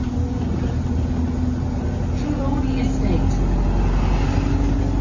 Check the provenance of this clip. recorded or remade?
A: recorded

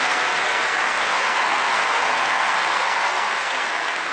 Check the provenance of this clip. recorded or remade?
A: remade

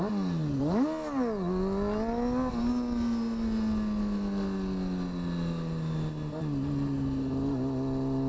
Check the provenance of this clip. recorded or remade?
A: recorded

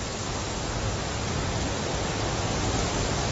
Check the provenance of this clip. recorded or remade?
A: recorded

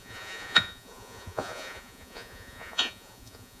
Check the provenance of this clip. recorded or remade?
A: remade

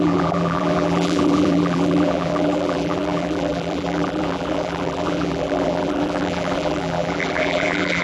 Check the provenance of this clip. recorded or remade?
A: remade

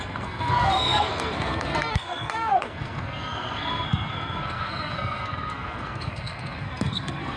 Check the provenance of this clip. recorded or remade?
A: remade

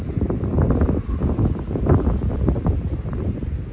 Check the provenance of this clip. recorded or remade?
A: recorded